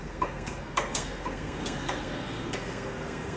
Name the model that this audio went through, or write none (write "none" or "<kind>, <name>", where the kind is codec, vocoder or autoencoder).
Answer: codec, SNAC